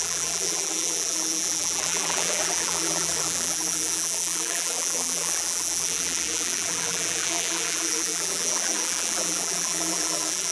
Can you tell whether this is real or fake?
fake